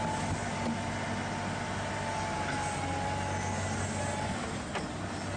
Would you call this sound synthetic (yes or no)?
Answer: no